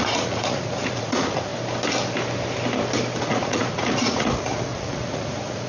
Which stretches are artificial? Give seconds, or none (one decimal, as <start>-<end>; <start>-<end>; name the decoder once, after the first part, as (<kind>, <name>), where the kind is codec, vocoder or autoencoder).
0.0-1.5 (vocoder, Vocos); 3.2-5.7